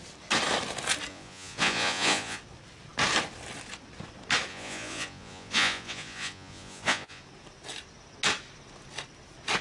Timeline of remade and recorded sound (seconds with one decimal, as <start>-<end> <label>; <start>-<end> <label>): 0.0-1.1 recorded; 1.1-2.4 remade; 2.4-4.5 recorded; 4.5-7.2 remade; 7.2-9.6 recorded